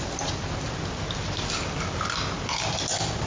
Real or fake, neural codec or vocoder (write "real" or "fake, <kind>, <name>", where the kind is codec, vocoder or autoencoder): real